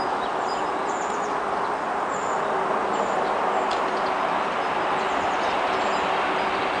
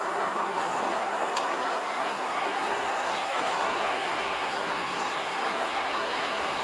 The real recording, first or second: first